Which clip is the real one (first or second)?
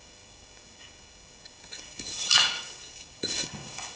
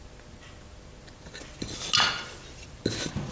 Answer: second